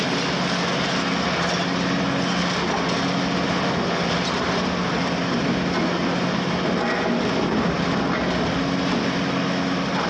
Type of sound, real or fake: real